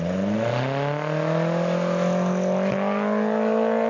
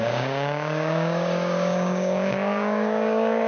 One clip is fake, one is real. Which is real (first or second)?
first